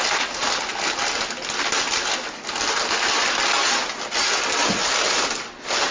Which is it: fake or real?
real